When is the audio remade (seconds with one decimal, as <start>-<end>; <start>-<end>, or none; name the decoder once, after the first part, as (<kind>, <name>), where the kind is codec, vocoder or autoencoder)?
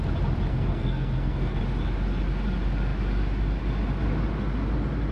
0.5-1.6 (codec, SNAC)